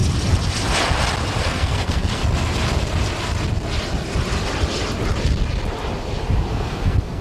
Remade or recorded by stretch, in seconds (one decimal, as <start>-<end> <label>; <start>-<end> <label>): 0.0-1.4 recorded; 1.4-2.2 remade; 2.2-6.5 recorded; 6.5-7.2 remade